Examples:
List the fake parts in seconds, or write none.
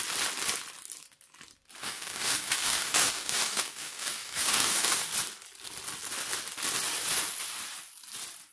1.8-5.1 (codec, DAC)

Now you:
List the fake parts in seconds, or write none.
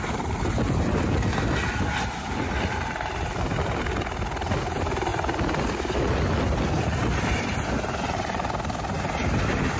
none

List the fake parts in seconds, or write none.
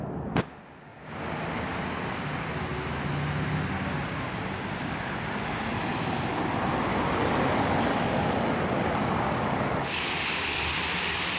7.9-10.6 (codec, DAC)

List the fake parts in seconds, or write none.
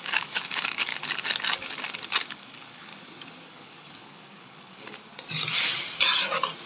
0.0-0.9 (codec, DAC); 2.3-2.9; 3.4-5.1